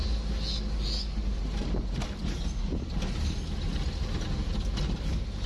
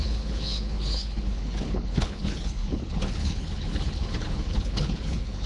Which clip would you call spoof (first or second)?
second